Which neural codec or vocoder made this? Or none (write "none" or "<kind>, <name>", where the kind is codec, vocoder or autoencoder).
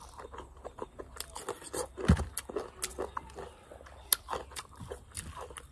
none